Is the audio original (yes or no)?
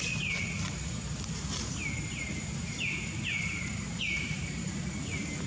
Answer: yes